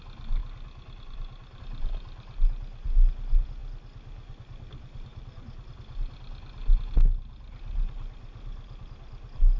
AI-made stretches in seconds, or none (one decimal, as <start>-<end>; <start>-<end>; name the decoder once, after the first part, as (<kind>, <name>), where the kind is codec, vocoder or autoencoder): none

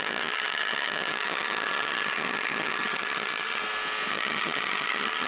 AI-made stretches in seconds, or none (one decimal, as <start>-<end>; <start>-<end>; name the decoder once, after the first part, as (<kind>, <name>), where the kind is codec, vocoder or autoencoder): 0.0-3.6 (vocoder, HiFi-GAN); 4.1-5.3